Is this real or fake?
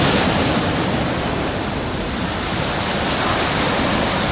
real